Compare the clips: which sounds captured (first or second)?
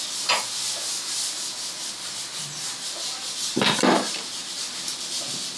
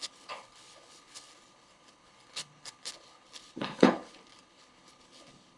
first